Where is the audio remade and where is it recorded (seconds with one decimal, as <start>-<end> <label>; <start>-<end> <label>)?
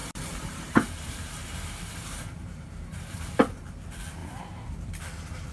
0.0-3.2 remade; 3.2-4.2 recorded; 4.2-4.9 remade; 4.9-5.5 recorded